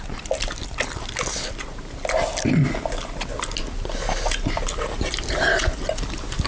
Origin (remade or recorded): recorded